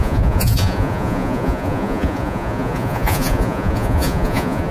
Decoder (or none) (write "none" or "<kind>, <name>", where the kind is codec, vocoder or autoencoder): vocoder, Vocos